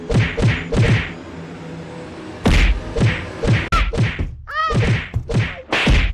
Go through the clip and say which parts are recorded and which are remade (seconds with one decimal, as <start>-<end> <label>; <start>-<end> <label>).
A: 0.0-6.1 recorded